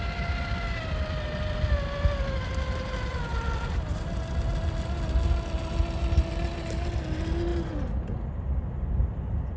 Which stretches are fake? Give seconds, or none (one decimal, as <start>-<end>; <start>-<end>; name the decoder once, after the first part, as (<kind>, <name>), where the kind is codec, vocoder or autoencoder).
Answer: 3.3-4.0 (vocoder, BigVGAN v2)